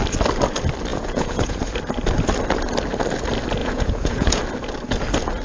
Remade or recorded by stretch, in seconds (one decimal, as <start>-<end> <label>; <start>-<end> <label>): 0.0-0.9 recorded; 0.9-1.6 remade; 1.6-3.6 recorded; 3.6-4.4 remade; 4.4-5.4 recorded